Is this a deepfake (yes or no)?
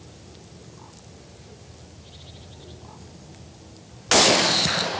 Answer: no